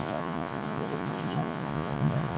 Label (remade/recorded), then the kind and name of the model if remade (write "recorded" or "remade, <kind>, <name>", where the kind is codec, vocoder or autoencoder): remade, vocoder, Vocos